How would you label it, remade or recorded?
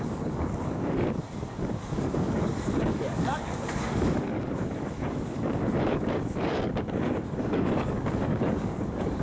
remade